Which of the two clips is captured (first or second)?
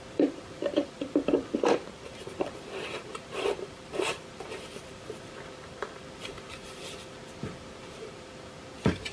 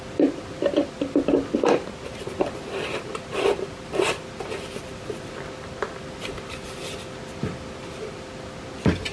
second